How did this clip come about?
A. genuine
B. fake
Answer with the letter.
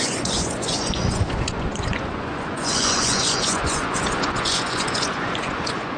B